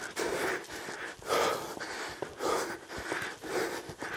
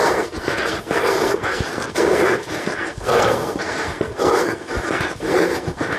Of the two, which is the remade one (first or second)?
second